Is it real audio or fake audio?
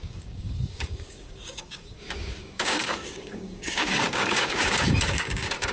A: fake